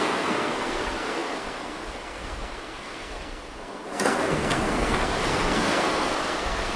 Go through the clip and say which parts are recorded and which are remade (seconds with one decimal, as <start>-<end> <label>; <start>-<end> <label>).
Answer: 0.0-6.8 remade